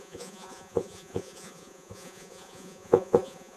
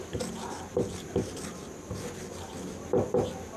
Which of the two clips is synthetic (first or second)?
first